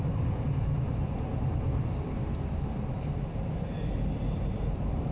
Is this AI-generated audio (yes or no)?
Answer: yes